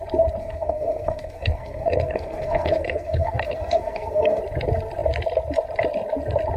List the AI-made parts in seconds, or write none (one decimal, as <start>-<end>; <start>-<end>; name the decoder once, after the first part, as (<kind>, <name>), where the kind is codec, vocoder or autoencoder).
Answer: 0.4-4.4 (codec, SNAC)